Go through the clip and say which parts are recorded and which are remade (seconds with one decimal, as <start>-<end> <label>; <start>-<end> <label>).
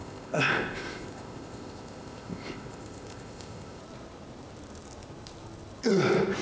0.0-3.8 remade; 3.8-6.4 recorded